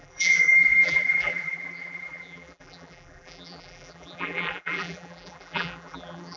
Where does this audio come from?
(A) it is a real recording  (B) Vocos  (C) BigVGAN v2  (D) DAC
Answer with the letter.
C